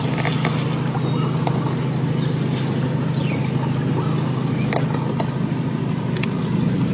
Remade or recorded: recorded